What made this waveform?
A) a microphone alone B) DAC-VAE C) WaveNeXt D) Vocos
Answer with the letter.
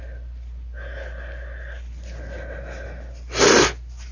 A